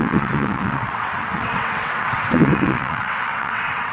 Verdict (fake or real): fake